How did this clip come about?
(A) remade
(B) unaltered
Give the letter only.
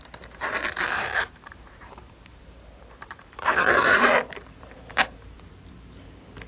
A